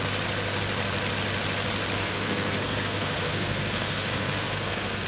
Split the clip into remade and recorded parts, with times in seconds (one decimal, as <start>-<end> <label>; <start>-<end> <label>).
0.0-2.0 recorded; 2.0-5.1 remade